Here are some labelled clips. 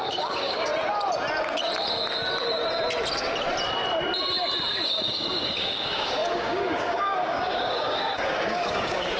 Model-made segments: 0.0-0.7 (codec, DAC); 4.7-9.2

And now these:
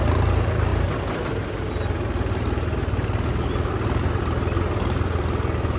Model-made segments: none

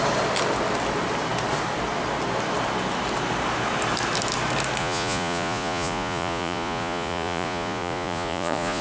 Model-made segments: 4.8-8.8 (vocoder, Vocos)

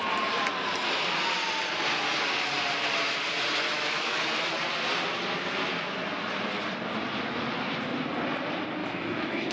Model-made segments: 3.7-4.5 (autoencoder, DAC-VAE); 8.8-9.5

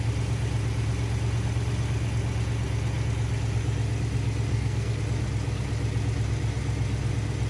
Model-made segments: 4.5-5.0 (codec, SNAC)

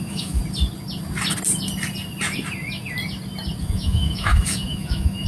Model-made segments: 0.0-0.4 (autoencoder, DAC-VAE); 3.6-5.3

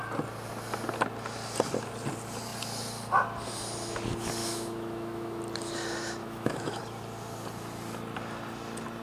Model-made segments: 4.4-5.4 (autoencoder, DAC-VAE); 6.2-6.8

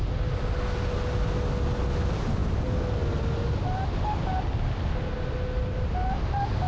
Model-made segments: none